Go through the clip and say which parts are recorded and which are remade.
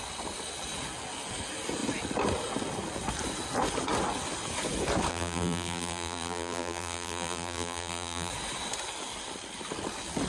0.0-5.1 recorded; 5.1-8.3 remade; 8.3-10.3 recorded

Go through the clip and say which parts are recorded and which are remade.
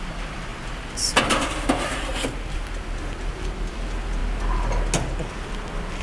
0.0-0.5 remade; 0.5-1.2 recorded; 1.2-2.1 remade; 2.1-3.7 recorded; 3.7-4.2 remade; 4.2-5.2 recorded; 5.2-6.0 remade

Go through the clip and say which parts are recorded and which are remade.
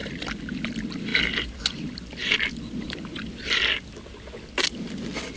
0.0-2.2 recorded; 2.2-3.6 remade; 3.6-5.4 recorded